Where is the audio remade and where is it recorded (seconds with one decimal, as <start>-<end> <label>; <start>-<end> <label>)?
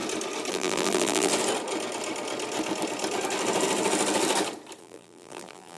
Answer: 0.0-0.5 recorded; 0.5-1.3 remade; 1.3-4.8 recorded; 4.8-5.8 remade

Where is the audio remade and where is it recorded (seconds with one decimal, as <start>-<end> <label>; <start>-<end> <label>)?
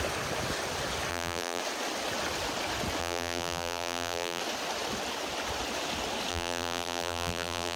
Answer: 0.0-1.1 recorded; 1.1-1.6 remade; 1.6-3.0 recorded; 3.0-4.4 remade; 4.4-6.3 recorded; 6.3-7.8 remade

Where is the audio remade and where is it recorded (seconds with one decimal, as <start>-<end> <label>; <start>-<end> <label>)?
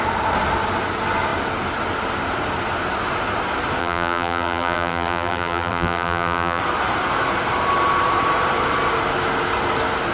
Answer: 0.0-3.8 recorded; 3.8-6.6 remade; 6.6-10.1 recorded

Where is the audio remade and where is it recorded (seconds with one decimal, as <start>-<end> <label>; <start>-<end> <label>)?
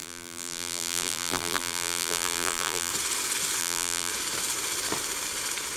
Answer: 0.0-2.9 remade; 2.9-3.6 recorded; 3.6-4.1 remade; 4.1-5.8 recorded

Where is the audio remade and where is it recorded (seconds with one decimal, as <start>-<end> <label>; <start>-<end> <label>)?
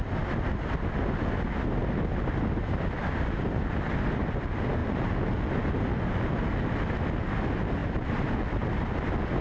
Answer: 0.0-7.8 recorded; 7.8-8.3 remade; 8.3-9.4 recorded